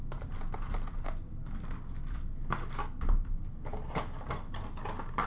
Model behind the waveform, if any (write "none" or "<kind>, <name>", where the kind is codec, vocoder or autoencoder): none